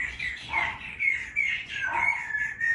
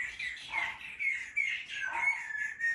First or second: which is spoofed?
first